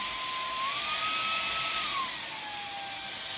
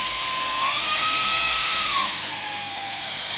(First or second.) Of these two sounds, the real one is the first